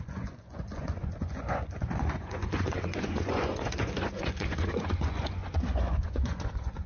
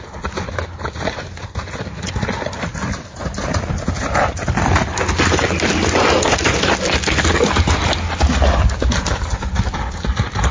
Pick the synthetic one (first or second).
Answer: first